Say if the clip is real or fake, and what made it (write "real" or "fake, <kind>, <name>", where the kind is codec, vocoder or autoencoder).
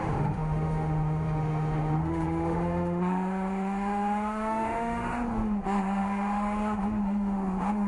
fake, autoencoder, DAC-VAE